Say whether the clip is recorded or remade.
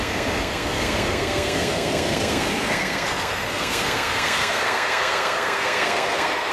remade